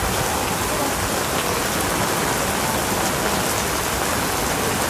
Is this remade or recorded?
recorded